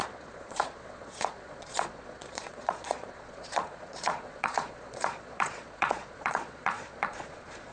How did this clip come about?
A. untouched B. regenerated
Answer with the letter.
B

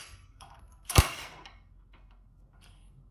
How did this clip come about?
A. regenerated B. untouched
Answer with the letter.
A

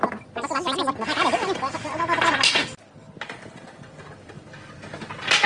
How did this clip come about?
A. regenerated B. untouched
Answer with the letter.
B